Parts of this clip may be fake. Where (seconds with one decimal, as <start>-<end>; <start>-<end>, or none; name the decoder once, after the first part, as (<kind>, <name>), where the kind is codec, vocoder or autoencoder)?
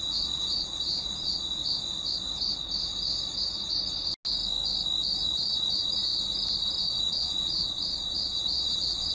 0.0-1.6 (vocoder, Vocos); 5.2-6.1; 6.8-9.1